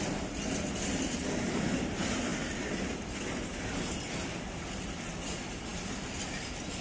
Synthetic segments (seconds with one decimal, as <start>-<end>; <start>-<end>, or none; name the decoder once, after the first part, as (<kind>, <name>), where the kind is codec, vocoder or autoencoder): none